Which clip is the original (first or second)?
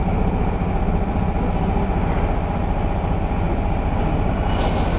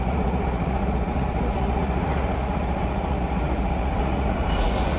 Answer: first